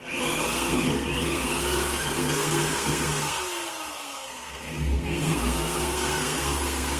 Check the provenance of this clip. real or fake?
fake